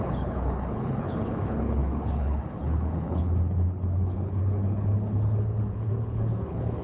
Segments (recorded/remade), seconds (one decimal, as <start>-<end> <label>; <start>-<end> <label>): 0.0-6.8 remade